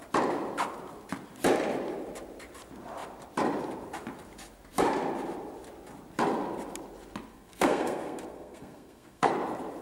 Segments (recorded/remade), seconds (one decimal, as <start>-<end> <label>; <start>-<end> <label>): 0.0-7.3 recorded; 7.3-9.3 remade; 9.3-9.8 recorded